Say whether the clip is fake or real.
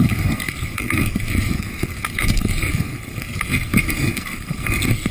fake